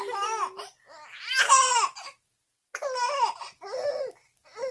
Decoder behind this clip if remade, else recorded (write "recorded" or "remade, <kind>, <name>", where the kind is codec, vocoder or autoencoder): recorded